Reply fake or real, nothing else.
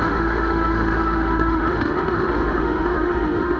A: fake